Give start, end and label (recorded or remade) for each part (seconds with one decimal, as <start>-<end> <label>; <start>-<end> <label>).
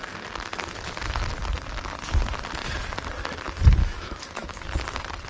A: 0.0-3.8 recorded; 3.8-4.6 remade; 4.6-5.3 recorded